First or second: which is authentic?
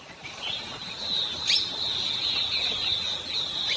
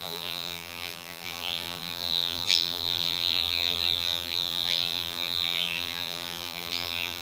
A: first